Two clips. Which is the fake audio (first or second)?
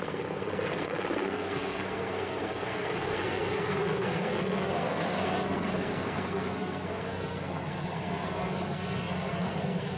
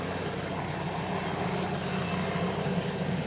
first